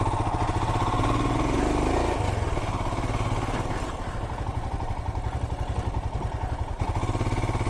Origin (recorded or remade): recorded